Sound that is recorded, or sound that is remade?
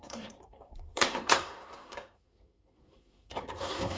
remade